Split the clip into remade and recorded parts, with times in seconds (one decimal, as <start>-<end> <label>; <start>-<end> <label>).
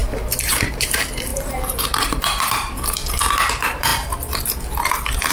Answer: 0.0-3.9 remade; 3.9-5.3 recorded